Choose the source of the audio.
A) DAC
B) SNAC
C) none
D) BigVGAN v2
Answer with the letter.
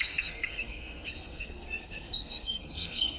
B